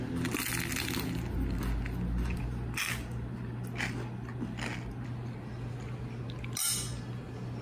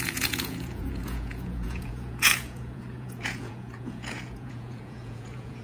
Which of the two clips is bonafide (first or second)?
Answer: first